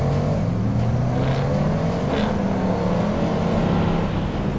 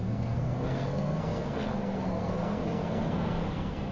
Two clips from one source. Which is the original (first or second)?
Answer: first